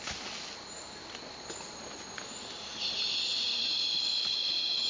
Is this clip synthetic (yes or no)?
no